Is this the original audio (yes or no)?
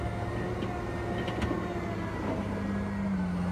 yes